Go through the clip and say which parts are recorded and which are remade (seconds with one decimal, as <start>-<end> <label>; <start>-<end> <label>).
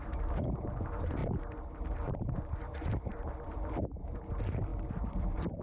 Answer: 0.0-5.6 remade